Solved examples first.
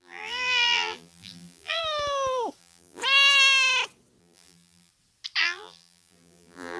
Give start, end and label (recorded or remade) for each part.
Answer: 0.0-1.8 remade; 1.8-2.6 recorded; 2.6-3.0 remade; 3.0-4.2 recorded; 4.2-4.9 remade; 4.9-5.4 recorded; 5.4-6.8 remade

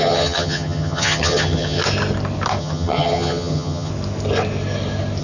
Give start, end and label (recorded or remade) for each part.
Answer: 0.0-1.8 remade; 1.8-2.6 recorded; 2.6-3.9 remade; 3.9-5.2 recorded

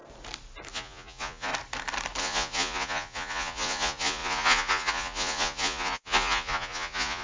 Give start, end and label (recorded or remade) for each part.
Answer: 0.0-0.7 recorded; 0.7-1.5 remade; 1.5-2.2 recorded; 2.2-7.2 remade

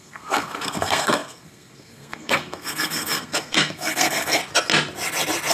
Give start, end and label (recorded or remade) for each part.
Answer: 0.0-4.4 remade; 4.4-5.5 recorded

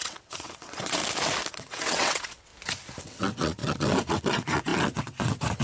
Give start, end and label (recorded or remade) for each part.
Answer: 0.0-1.0 remade; 1.0-1.5 recorded; 1.5-2.5 remade; 2.5-3.0 recorded; 3.0-5.6 remade

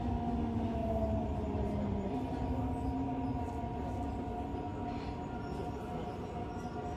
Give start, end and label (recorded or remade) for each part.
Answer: 0.0-0.8 recorded; 0.8-3.5 remade; 3.5-7.0 recorded